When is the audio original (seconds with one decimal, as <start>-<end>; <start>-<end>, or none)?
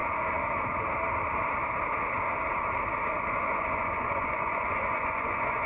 0.0-3.4